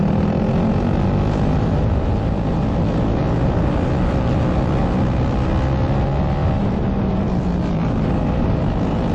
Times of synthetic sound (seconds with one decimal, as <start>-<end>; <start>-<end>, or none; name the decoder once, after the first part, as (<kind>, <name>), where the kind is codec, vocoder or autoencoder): 6.4-7.8 (vocoder, BigVGAN v2)